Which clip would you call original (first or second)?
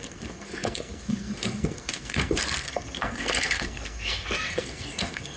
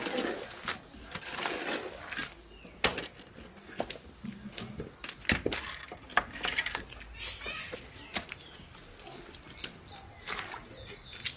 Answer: second